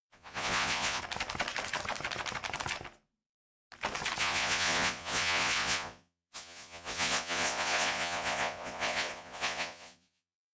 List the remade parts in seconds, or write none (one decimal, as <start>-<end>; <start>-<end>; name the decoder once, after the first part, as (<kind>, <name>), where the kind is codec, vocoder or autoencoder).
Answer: 0.0-1.0 (vocoder, Vocos); 4.2-10.5